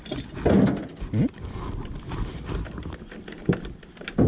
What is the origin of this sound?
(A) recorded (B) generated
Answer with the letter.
A